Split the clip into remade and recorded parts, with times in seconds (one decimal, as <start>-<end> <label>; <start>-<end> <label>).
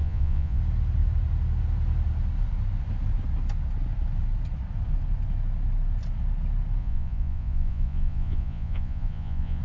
0.0-0.6 remade; 0.6-6.8 recorded; 6.8-9.6 remade